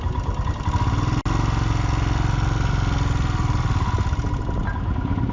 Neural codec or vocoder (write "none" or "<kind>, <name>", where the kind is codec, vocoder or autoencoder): none